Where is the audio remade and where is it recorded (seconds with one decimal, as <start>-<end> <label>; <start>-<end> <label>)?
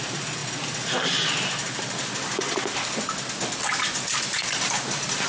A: 0.0-5.3 recorded